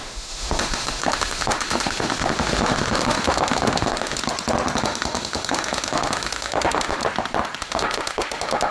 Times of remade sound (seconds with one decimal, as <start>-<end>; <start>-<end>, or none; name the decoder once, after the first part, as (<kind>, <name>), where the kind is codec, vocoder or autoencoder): 0.0-4.2 (autoencoder, DAC-VAE); 4.8-7.0; 7.6-8.7